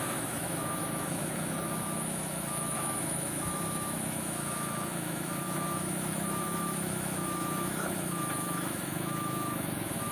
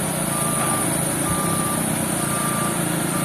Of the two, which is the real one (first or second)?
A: second